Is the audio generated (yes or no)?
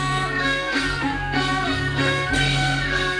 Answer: yes